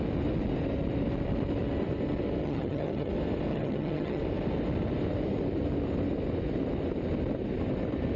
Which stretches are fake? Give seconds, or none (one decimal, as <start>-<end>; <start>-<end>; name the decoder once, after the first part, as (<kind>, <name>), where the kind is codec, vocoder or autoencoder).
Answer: 2.4-3.1 (vocoder, HiFi-GAN); 3.5-4.2